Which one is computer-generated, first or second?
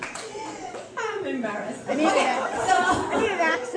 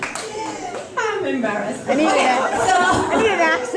first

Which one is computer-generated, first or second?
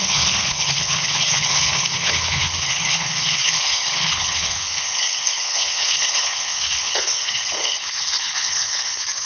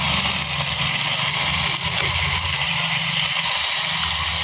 first